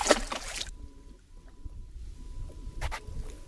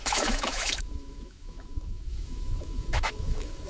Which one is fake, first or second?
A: second